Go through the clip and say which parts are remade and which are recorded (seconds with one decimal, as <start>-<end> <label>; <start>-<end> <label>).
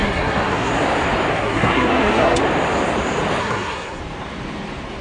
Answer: 0.0-0.7 remade; 0.7-1.3 recorded; 1.3-2.4 remade; 2.4-3.4 recorded; 3.4-4.0 remade; 4.0-5.0 recorded